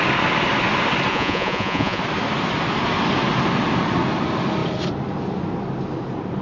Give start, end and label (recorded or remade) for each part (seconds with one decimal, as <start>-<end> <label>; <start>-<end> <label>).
0.0-1.1 recorded; 1.1-2.0 remade; 2.0-6.4 recorded